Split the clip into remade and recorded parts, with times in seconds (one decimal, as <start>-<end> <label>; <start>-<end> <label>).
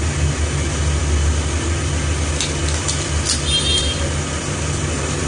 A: 0.0-5.3 recorded